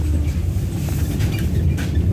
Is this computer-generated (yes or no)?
no